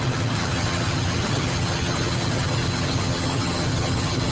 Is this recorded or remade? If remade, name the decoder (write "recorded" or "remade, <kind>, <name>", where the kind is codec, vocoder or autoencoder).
remade, vocoder, HiFi-GAN